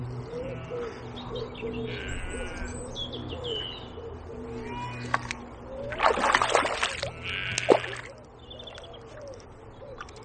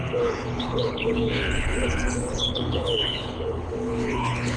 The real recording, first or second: first